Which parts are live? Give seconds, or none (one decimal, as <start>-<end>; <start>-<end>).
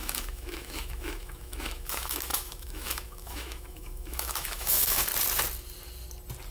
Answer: 5.1-6.5